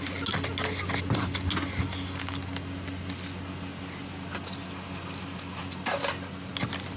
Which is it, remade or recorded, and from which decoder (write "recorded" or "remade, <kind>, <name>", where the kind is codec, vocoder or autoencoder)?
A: recorded